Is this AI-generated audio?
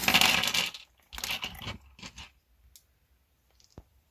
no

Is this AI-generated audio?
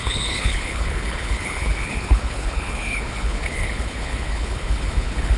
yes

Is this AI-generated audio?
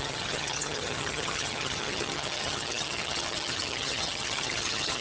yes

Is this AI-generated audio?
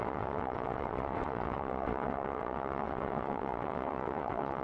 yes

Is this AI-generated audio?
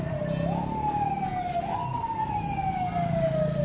no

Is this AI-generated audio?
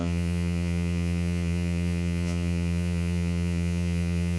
yes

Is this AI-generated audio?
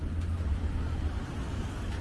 no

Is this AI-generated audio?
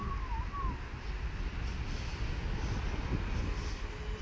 no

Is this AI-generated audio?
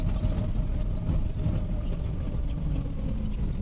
no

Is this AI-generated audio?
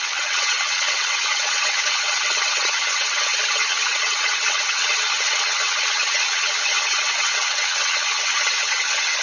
yes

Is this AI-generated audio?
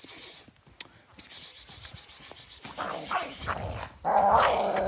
no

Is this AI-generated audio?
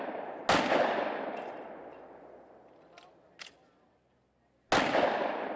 no